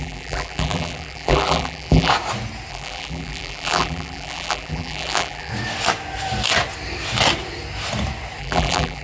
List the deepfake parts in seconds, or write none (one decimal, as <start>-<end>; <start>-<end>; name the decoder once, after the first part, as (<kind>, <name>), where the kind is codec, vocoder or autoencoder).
0.0-2.1 (vocoder, BigVGAN v2); 2.7-5.5; 8.4-9.0